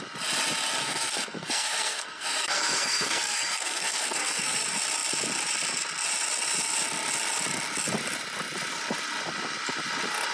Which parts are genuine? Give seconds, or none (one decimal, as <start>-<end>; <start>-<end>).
0.0-0.8; 4.6-10.3